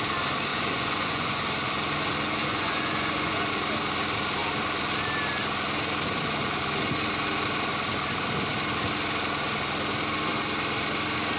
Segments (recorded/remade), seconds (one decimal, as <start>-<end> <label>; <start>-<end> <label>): 0.0-0.5 recorded; 0.5-1.4 remade; 1.4-2.4 recorded; 2.4-3.5 remade; 3.5-11.4 recorded